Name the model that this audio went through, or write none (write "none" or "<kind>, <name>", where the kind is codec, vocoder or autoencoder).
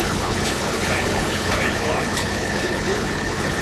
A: codec, HILCodec